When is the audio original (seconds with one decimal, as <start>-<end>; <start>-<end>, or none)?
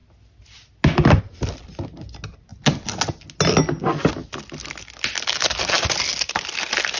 0.0-7.0